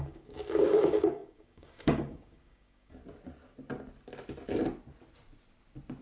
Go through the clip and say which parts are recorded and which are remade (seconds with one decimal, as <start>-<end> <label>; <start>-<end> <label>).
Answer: 0.0-3.0 remade; 3.0-6.0 recorded